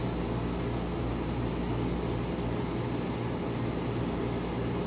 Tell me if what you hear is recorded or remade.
recorded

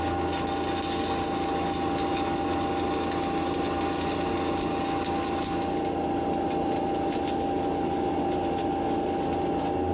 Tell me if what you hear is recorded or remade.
recorded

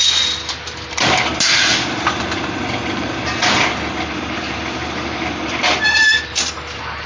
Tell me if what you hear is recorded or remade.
recorded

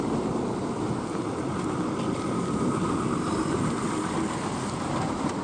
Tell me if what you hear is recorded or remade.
recorded